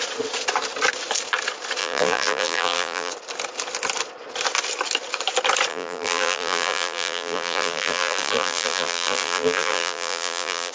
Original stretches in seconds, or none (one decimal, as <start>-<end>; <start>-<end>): 0.0-1.8; 3.1-5.7